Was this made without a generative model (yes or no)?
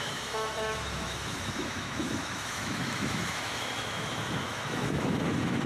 no